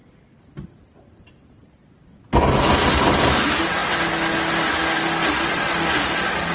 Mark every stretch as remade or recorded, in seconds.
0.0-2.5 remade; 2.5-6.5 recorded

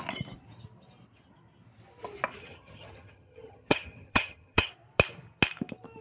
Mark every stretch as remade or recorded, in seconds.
0.0-2.4 recorded; 2.4-4.7 remade; 4.7-6.0 recorded

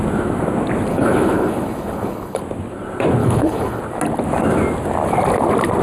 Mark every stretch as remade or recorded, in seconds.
0.0-0.9 recorded; 0.9-2.4 remade; 2.4-3.2 recorded; 3.2-3.8 remade; 3.8-5.8 recorded

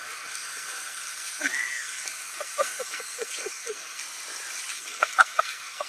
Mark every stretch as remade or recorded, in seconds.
0.0-4.0 remade; 4.0-4.7 recorded; 4.7-5.9 remade

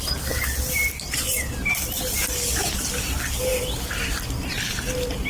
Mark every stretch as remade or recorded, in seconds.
0.0-3.5 recorded; 3.5-4.5 remade; 4.5-5.3 recorded

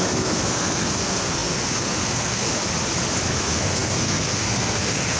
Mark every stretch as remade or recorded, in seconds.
0.0-2.6 remade; 2.6-3.3 recorded; 3.3-5.2 remade

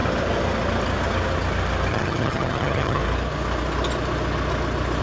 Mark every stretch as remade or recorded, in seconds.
0.0-1.9 recorded; 1.9-3.0 remade; 3.0-5.0 recorded